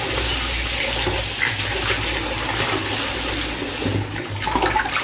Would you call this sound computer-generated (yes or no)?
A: no